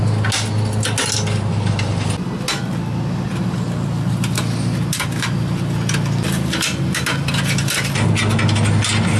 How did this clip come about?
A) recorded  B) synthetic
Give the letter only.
A